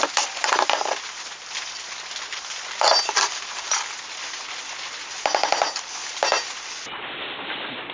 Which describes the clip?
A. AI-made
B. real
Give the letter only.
B